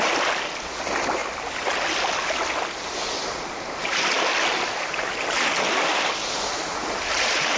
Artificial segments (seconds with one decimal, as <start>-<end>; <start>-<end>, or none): 6.8-7.6